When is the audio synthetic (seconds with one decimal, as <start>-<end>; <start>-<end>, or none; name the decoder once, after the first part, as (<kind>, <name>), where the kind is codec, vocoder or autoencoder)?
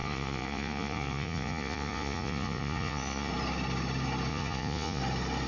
0.0-3.3 (vocoder, Vocos); 4.3-5.0